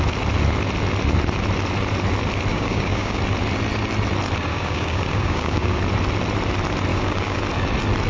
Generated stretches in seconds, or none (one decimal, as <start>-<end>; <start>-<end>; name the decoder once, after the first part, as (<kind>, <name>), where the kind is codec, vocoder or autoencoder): 2.5-3.2 (codec, DAC); 4.5-5.8; 6.9-7.4